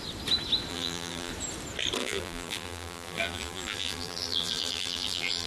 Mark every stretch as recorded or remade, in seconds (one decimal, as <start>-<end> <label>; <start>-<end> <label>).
0.0-0.7 recorded; 0.7-1.3 remade; 1.3-2.0 recorded; 2.0-5.5 remade